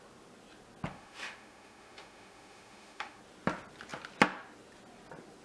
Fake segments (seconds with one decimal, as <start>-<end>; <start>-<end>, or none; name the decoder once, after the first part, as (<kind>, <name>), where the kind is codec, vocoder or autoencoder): 0.9-3.2 (autoencoder, DAC-VAE)